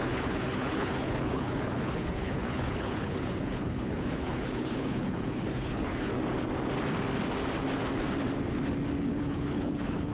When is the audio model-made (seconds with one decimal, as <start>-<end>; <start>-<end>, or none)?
0.0-6.1; 9.0-10.1